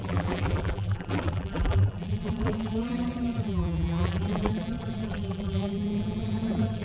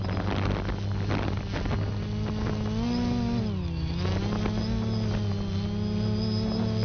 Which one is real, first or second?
second